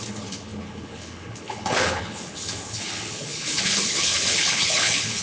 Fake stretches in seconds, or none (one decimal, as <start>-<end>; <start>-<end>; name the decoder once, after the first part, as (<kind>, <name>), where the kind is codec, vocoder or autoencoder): 0.0-5.2 (codec, HILCodec)

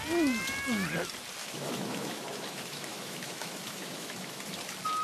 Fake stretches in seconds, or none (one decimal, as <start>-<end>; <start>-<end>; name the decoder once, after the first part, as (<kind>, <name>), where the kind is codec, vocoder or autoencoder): 1.4-4.4 (autoencoder, DAC-VAE)

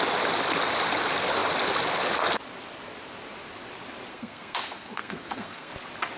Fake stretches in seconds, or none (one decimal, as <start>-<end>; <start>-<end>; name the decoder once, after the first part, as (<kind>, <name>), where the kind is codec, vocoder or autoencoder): 4.1-5.7 (codec, SNAC)

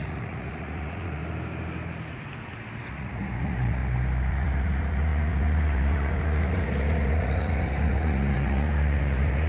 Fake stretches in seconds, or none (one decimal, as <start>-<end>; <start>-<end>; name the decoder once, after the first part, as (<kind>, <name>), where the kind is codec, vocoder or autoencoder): 0.0-1.2 (vocoder, Vocos); 2.9-3.8; 4.3-9.5

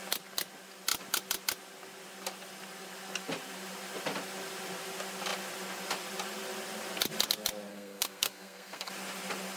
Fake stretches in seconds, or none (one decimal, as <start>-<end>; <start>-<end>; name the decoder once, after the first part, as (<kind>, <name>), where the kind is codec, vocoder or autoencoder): 7.7-8.9 (codec, SNAC)